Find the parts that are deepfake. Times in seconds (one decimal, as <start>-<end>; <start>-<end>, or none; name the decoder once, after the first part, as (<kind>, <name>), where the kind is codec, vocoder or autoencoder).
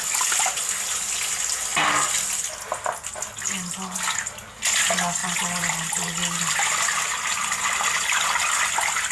none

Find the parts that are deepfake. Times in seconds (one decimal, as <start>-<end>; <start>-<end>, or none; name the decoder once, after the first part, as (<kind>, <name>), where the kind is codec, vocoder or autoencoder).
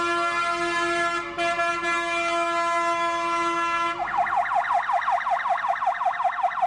none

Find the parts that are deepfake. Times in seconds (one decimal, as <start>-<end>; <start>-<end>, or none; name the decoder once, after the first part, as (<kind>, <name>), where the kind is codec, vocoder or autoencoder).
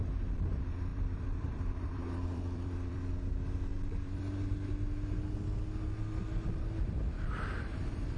0.9-3.1 (vocoder, BigVGAN v2); 3.7-4.2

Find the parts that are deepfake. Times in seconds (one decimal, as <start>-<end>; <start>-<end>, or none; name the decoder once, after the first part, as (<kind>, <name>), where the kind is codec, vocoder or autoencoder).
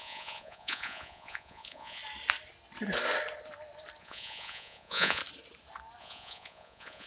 0.0-2.0 (vocoder, Vocos); 4.0-5.2; 6.0-7.1